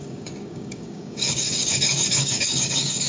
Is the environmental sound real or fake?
fake